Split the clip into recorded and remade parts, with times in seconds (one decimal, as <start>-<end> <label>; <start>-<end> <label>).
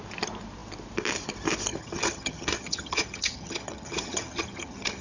0.0-1.7 recorded; 1.7-5.0 remade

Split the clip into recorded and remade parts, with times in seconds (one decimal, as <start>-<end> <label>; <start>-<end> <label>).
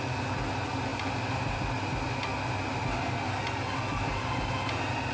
0.0-5.1 recorded